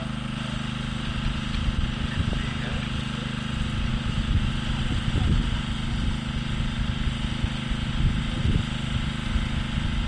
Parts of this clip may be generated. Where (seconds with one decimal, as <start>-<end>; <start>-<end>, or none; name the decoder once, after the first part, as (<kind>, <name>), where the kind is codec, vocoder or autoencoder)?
3.9-4.5 (autoencoder, DAC-VAE)